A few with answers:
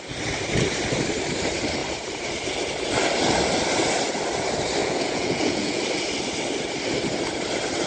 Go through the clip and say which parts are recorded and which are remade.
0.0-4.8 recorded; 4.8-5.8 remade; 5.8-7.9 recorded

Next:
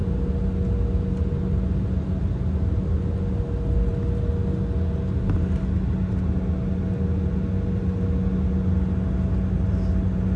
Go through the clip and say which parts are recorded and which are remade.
0.0-10.4 recorded

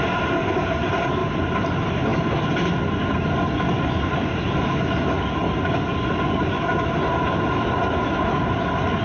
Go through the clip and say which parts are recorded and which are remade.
0.0-9.0 recorded